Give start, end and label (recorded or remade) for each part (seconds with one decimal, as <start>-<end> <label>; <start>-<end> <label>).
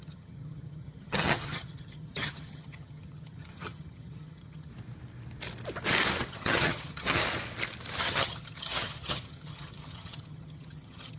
0.0-4.7 remade; 4.7-6.3 recorded; 6.3-7.2 remade; 7.2-8.0 recorded; 8.0-11.2 remade